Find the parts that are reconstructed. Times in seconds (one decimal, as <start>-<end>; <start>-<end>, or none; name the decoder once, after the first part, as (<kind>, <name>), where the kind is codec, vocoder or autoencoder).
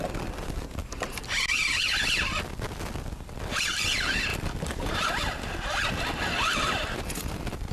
4.3-5.1 (vocoder, BigVGAN v2)